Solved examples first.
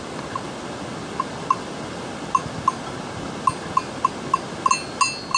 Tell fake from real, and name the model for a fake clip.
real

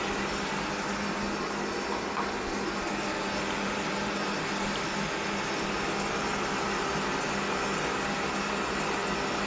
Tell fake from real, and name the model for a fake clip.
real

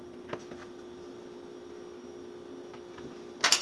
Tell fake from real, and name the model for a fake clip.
real